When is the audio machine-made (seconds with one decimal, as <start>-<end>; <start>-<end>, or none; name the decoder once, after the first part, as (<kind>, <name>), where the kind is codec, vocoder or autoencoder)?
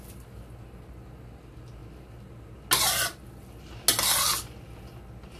none